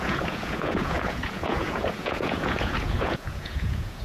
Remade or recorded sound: remade